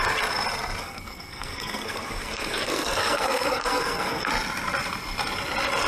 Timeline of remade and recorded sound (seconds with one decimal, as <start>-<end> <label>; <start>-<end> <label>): 0.0-0.8 recorded; 0.8-4.3 remade; 4.3-5.9 recorded